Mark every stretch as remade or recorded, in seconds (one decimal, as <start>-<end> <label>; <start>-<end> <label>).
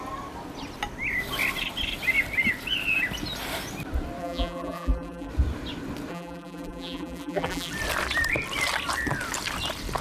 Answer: 0.0-4.2 recorded; 4.2-5.3 remade; 5.3-6.1 recorded; 6.1-7.7 remade; 7.7-10.0 recorded